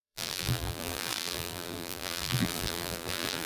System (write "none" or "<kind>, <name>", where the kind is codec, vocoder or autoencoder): vocoder, BigVGAN v2